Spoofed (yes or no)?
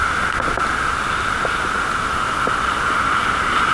no